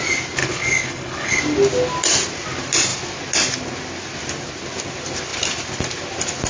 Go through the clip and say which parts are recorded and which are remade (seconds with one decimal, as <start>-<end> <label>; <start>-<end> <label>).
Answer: 0.0-0.4 recorded; 0.4-1.4 remade; 1.4-6.5 recorded